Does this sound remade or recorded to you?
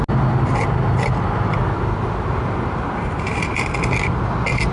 recorded